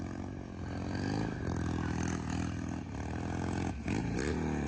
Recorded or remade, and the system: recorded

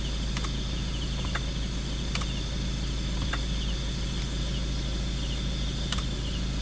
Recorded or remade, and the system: recorded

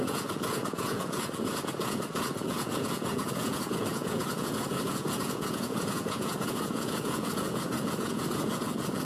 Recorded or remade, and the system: remade, vocoder, Vocos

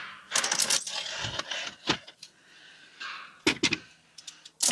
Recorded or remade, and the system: recorded